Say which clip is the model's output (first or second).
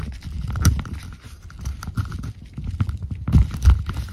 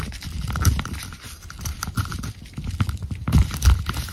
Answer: second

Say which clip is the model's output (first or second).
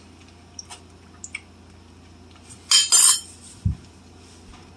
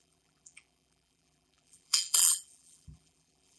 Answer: second